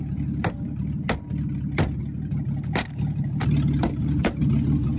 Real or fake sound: real